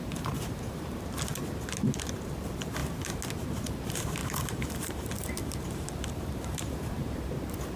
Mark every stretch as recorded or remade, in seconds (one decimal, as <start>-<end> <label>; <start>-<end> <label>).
0.0-1.0 remade; 1.0-4.2 recorded; 4.2-7.3 remade; 7.3-7.8 recorded